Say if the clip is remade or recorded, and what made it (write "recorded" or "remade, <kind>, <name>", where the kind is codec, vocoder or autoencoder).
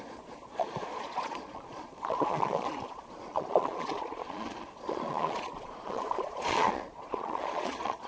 remade, vocoder, Vocos